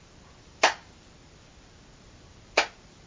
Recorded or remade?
recorded